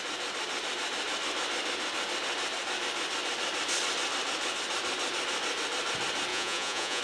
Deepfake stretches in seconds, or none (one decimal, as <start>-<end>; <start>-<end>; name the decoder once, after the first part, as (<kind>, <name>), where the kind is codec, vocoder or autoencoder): 6.3-7.0 (vocoder, Vocos)